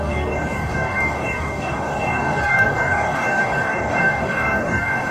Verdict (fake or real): fake